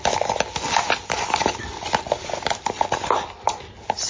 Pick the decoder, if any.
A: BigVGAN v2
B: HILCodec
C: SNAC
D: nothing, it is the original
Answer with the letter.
D